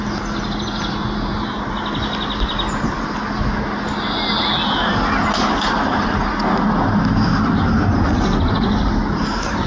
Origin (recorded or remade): recorded